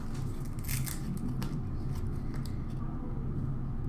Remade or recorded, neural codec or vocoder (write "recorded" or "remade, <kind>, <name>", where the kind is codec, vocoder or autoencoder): recorded